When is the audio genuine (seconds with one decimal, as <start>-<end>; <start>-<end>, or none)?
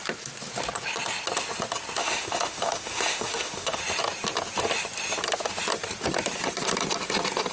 0.0-2.0; 3.8-7.5